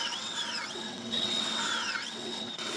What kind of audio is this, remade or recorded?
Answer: remade